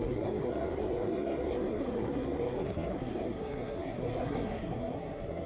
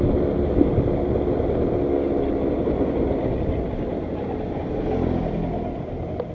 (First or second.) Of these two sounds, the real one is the second